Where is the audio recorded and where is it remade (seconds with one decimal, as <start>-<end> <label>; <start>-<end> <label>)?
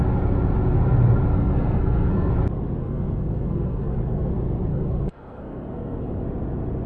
0.0-1.3 recorded; 1.3-2.3 remade; 2.3-2.8 recorded; 2.8-4.3 remade; 4.3-4.7 recorded; 4.7-6.2 remade; 6.2-6.9 recorded